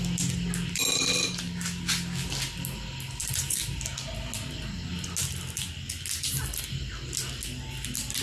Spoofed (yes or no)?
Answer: no